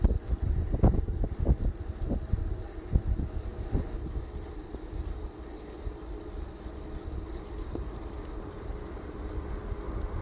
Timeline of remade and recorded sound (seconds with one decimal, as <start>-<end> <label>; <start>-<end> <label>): 0.0-10.2 recorded